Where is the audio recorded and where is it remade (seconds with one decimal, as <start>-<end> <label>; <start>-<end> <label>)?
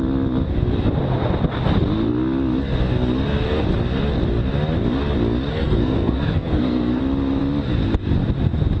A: 0.0-5.5 recorded; 5.5-7.0 remade; 7.0-8.8 recorded